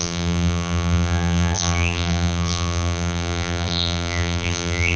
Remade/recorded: remade